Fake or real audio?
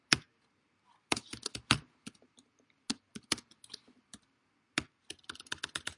real